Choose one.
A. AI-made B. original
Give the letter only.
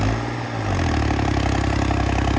B